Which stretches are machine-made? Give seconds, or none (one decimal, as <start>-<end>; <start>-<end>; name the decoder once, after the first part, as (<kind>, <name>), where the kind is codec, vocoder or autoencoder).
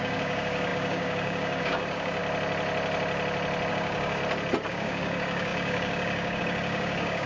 0.0-2.2 (codec, DAC); 3.7-4.2; 4.7-7.3